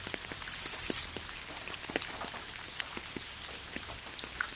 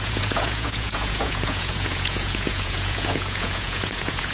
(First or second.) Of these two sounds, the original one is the first